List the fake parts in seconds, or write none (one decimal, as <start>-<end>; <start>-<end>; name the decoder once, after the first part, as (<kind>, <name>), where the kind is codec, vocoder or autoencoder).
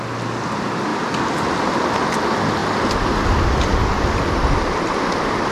none